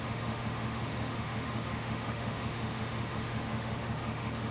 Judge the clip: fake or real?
fake